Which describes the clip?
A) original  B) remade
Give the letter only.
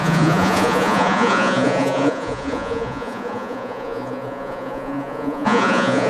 B